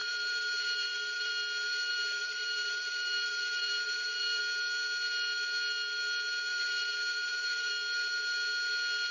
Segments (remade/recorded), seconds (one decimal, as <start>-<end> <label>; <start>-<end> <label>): 0.0-1.3 remade; 1.3-1.9 recorded; 1.9-4.4 remade; 4.4-6.5 recorded; 6.5-7.7 remade; 7.7-9.1 recorded